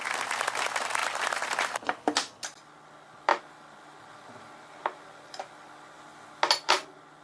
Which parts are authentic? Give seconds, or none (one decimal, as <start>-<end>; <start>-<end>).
0.0-7.2